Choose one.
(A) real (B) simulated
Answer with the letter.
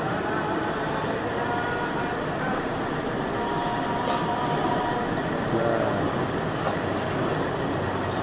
A